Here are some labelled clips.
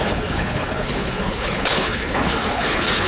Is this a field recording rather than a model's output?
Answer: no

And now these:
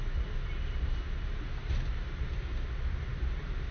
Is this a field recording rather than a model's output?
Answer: yes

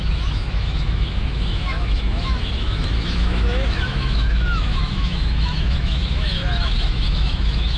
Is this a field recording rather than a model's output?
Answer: no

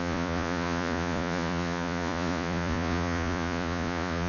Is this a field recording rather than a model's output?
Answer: no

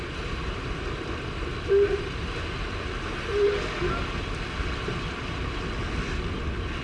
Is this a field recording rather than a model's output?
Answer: yes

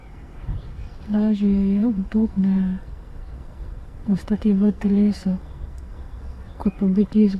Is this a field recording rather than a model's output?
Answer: no